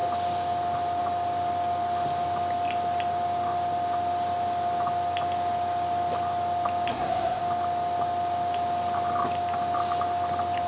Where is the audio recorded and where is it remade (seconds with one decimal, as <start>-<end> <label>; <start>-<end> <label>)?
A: 0.0-6.9 recorded; 6.9-7.4 remade; 7.4-10.7 recorded